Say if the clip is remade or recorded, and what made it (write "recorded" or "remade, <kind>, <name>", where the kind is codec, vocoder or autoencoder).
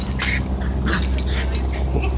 recorded